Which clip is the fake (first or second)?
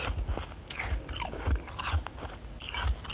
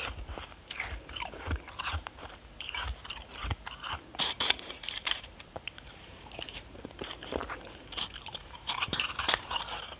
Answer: second